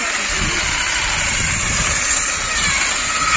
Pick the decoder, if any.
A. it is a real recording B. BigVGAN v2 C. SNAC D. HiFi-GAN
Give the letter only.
A